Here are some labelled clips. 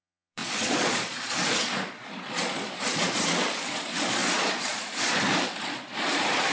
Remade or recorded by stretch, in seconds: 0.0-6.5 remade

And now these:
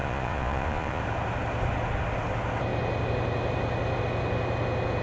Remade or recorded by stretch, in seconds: 0.0-1.0 remade; 1.0-5.0 recorded

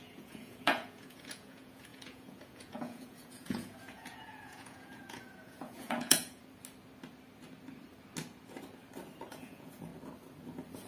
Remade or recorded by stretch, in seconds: 0.0-6.4 remade; 6.4-9.3 recorded; 9.3-9.9 remade; 9.9-10.9 recorded

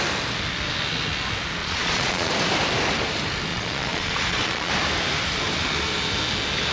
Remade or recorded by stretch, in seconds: 0.0-1.6 recorded; 1.6-2.3 remade; 2.3-3.5 recorded; 3.5-4.7 remade; 4.7-6.7 recorded